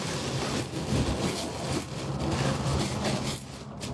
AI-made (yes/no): no